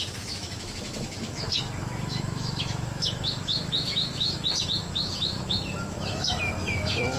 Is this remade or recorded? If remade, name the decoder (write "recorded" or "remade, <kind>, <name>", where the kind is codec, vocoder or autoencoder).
remade, autoencoder, DAC-VAE